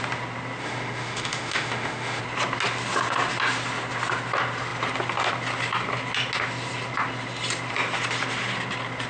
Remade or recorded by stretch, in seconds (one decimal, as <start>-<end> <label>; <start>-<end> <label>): 0.0-0.6 recorded; 0.6-2.2 remade; 2.2-9.1 recorded